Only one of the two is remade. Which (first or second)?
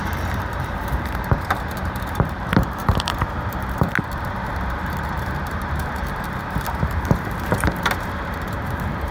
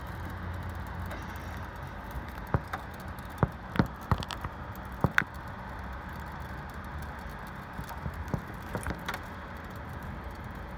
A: first